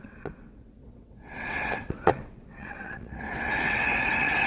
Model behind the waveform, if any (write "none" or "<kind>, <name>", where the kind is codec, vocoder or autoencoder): vocoder, WaveNeXt